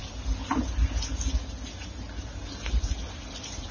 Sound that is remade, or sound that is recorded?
recorded